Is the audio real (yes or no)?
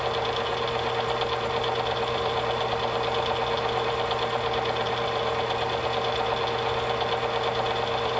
yes